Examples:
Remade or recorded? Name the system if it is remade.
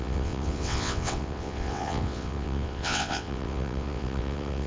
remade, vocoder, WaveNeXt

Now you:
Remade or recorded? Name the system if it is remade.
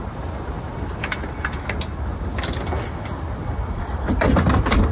recorded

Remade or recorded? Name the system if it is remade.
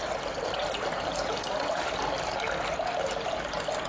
recorded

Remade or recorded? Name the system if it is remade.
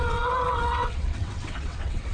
remade, vocoder, WaveNeXt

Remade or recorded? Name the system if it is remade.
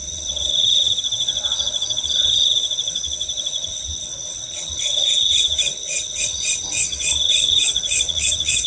remade, vocoder, WaveNeXt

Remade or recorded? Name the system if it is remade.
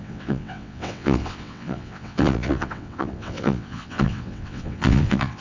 remade, vocoder, WaveNeXt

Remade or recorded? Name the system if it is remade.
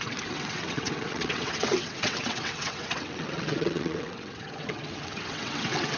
remade, vocoder, WaveNeXt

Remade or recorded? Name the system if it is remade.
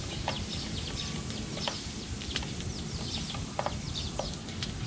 recorded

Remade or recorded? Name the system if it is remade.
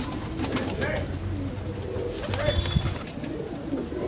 recorded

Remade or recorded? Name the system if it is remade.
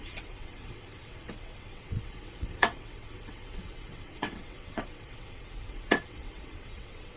remade, vocoder, WaveNeXt